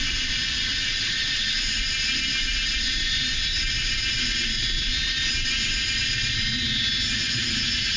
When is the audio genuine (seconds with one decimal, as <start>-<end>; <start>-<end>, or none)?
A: 0.0-0.7; 1.8-8.0

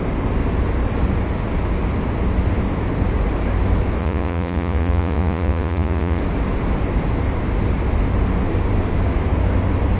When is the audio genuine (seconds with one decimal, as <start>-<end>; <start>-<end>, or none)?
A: 0.0-4.0; 6.2-10.0

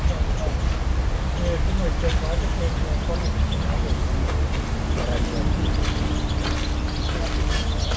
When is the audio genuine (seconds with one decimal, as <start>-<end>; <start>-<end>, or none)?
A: 0.0-8.0